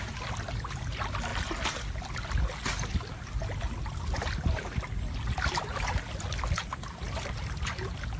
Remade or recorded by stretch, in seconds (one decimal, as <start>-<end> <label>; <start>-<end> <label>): 0.0-8.2 recorded